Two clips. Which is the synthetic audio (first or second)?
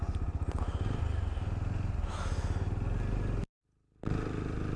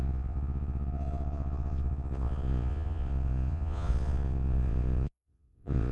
second